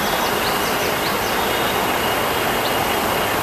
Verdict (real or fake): real